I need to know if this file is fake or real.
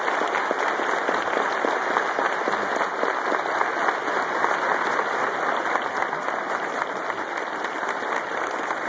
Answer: real